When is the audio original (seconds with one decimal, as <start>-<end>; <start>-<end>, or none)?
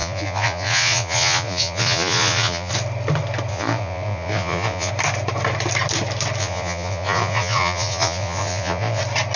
2.7-3.5; 4.9-6.4; 9.0-9.4